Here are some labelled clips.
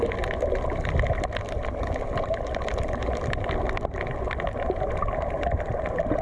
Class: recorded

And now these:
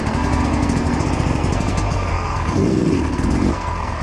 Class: remade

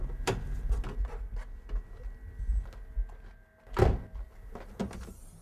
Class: recorded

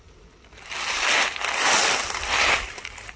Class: recorded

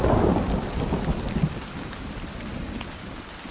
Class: recorded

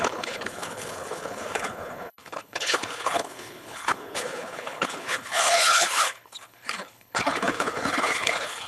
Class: remade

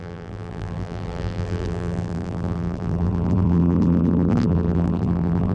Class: remade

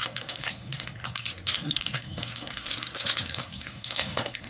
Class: remade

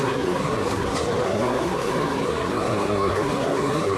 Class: remade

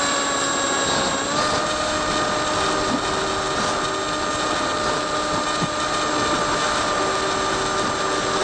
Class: recorded